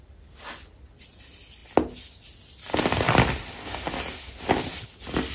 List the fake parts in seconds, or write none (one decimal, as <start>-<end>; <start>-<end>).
none